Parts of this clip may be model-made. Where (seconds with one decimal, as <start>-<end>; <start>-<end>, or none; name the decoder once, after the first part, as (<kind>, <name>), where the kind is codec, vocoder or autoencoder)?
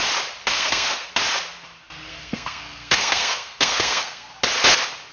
0.4-1.1 (codec, SNAC); 2.1-4.3